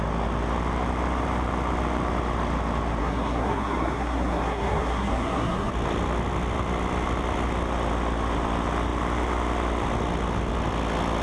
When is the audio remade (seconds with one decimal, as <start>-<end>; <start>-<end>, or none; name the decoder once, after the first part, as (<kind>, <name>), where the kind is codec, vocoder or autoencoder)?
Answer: 3.0-5.7 (codec, SNAC)